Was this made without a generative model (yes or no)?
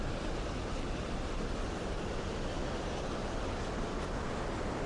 yes